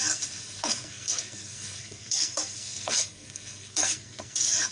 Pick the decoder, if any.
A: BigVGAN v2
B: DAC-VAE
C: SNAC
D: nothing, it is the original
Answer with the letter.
C